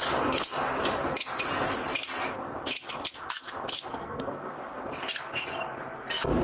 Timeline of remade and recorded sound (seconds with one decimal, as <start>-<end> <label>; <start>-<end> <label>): 0.0-3.9 recorded; 3.9-4.5 remade; 4.5-6.4 recorded